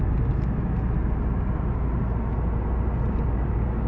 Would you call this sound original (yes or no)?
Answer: yes